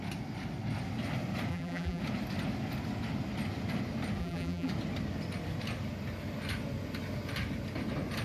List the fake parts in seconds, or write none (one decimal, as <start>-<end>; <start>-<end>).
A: 1.5-2.0; 4.2-4.7